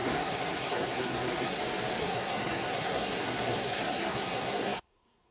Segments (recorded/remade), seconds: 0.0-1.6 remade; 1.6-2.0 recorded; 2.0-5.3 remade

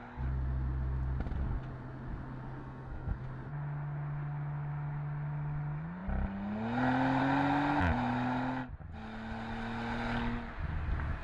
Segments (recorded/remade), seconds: 0.0-2.6 recorded; 2.6-3.2 remade; 3.2-11.2 recorded

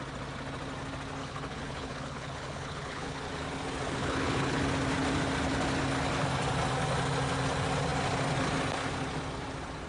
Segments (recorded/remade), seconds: 0.0-1.2 recorded; 1.2-3.3 remade; 3.3-4.0 recorded; 4.0-4.6 remade; 4.6-9.9 recorded

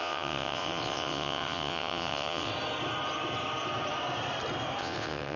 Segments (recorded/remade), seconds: 0.0-2.5 remade; 2.5-4.8 recorded; 4.8-5.4 remade

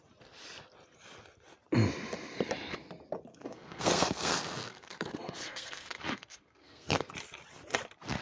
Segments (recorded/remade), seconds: 0.0-3.3 recorded; 3.3-7.1 remade; 7.1-8.2 recorded

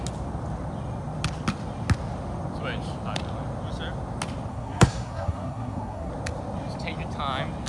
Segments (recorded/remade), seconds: 0.0-4.5 recorded; 4.5-6.1 remade; 6.1-7.7 recorded

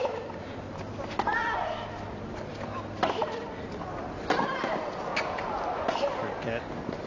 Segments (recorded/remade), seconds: 0.0-7.1 recorded